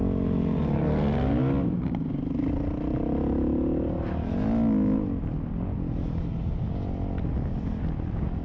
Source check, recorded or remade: recorded